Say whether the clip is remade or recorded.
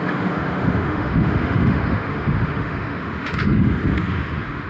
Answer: remade